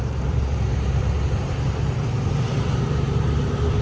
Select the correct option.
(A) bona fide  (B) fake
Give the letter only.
B